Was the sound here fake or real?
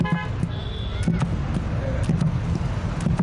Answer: real